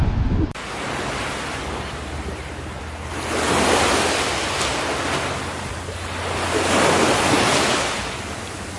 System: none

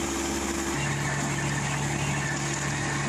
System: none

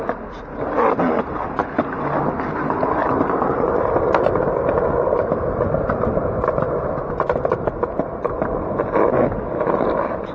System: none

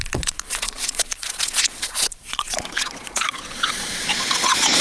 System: vocoder, Vocos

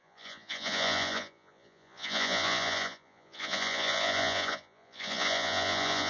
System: vocoder, Vocos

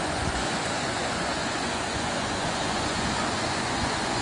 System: vocoder, Vocos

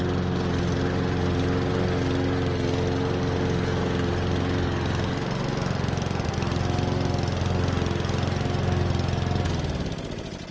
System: none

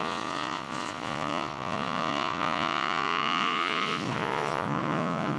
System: vocoder, Vocos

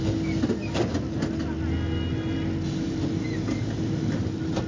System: none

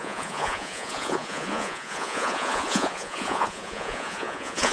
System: vocoder, Vocos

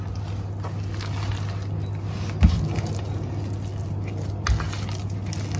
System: none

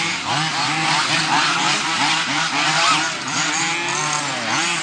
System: none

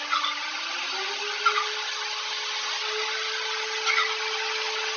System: none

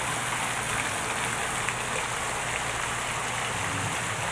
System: none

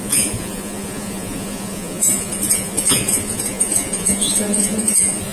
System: vocoder, Vocos